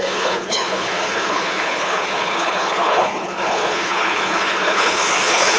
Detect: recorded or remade remade